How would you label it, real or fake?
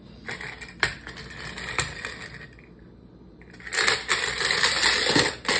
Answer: real